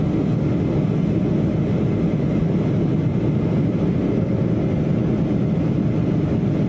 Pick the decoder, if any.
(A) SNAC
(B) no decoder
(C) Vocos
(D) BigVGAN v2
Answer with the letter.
B